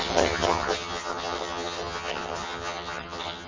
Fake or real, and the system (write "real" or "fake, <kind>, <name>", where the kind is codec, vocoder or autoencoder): fake, vocoder, HiFi-GAN